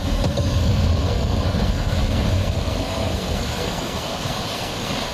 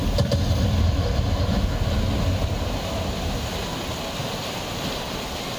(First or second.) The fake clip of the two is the first